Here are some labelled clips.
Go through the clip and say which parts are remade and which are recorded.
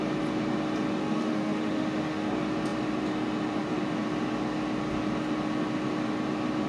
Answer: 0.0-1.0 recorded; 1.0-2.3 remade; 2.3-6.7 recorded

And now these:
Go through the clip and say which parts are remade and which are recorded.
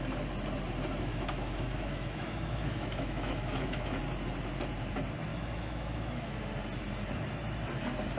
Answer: 0.0-1.1 recorded; 1.1-4.0 remade; 4.0-5.3 recorded; 5.3-6.4 remade; 6.4-8.2 recorded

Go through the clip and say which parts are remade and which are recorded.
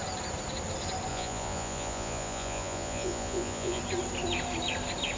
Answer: 0.0-1.1 recorded; 1.1-3.8 remade; 3.8-5.2 recorded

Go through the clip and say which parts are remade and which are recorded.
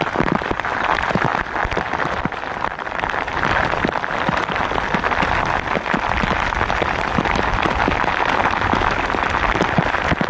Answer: 0.0-10.3 recorded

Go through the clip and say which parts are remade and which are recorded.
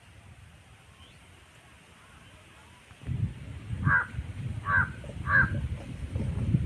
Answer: 0.0-2.6 recorded; 2.6-5.9 remade; 5.9-6.7 recorded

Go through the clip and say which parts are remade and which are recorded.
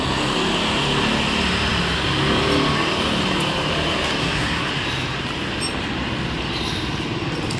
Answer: 0.0-4.2 recorded; 4.2-4.7 remade; 4.7-7.6 recorded